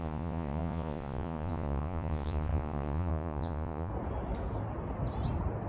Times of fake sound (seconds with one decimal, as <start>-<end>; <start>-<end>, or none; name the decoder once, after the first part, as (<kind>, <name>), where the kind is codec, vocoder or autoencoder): 0.0-3.9 (vocoder, Vocos)